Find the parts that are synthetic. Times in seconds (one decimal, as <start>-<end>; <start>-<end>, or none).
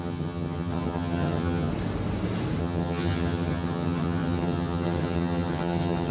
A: 0.0-1.7; 2.6-6.1